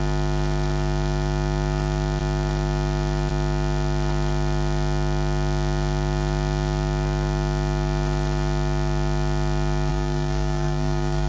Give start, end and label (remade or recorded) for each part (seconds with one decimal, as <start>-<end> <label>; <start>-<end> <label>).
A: 0.0-9.9 recorded; 9.9-11.3 remade